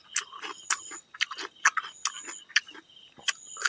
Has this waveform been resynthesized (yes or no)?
no